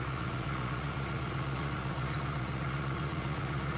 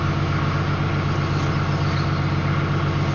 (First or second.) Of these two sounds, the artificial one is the first